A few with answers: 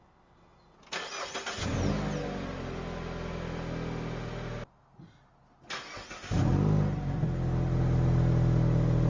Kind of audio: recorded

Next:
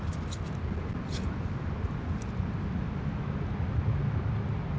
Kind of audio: recorded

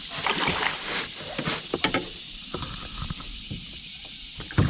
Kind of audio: recorded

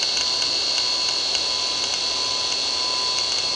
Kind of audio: recorded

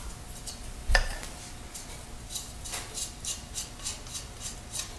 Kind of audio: recorded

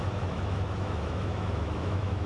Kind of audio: remade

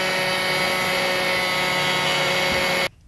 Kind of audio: recorded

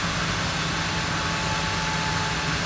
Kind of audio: recorded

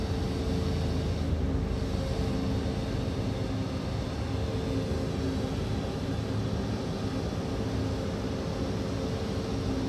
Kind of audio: recorded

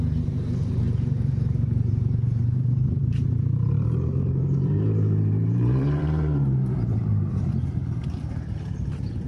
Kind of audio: remade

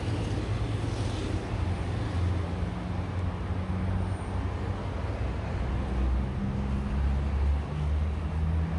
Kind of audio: recorded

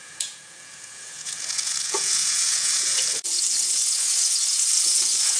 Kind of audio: remade